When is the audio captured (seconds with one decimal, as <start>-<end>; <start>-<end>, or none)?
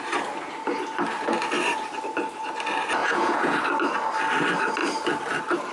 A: 0.0-3.0; 3.6-5.7